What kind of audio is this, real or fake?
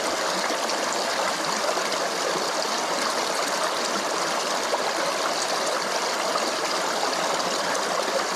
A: real